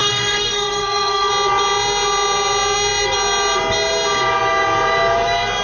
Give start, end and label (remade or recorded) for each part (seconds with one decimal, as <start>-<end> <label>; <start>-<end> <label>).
0.0-1.3 remade; 1.3-5.6 recorded